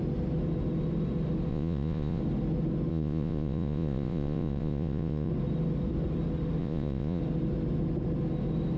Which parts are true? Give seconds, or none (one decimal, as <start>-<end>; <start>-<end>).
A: 0.0-1.5; 2.2-2.9; 5.3-6.6; 7.2-8.8